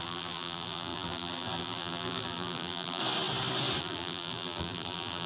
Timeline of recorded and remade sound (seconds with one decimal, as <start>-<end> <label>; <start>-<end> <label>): 0.0-3.0 remade; 3.0-3.8 recorded; 3.8-5.3 remade